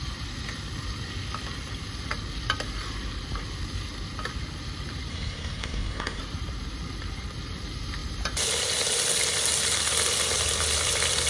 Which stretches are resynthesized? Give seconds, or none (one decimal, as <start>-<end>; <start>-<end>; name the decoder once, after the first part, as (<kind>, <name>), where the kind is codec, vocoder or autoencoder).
5.1-6.2 (codec, SNAC)